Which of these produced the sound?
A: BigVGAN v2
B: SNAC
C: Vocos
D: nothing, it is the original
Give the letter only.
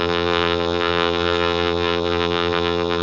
A